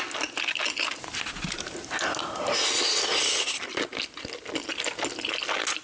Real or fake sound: real